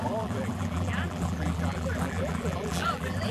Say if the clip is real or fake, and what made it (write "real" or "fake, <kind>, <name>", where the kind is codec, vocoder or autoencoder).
fake, vocoder, BigVGAN v2